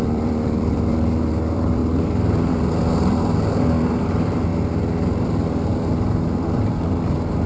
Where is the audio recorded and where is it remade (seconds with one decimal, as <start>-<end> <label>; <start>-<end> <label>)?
0.0-1.8 remade; 1.8-2.5 recorded; 2.5-4.5 remade; 4.5-5.1 recorded; 5.1-5.7 remade; 5.7-6.5 recorded; 6.5-7.5 remade